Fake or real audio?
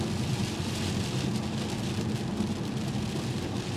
real